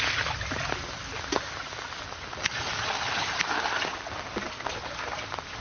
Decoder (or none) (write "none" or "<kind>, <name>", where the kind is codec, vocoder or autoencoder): none